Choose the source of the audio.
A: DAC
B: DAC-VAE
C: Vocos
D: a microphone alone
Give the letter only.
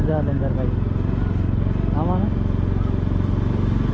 D